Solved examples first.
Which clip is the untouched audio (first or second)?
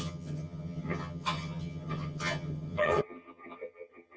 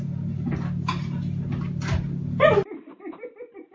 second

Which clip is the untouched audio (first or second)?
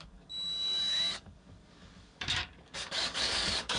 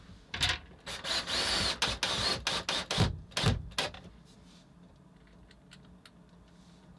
second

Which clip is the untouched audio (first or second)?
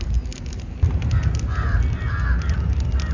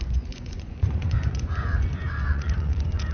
first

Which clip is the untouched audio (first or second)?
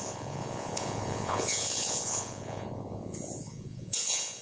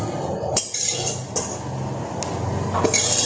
second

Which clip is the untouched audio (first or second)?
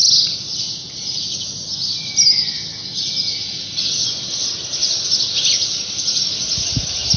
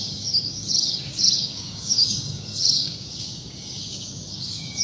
first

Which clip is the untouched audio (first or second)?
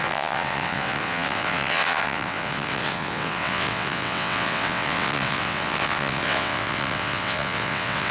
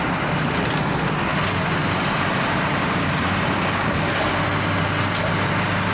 second